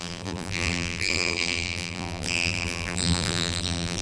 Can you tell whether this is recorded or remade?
remade